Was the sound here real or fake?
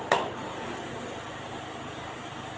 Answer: real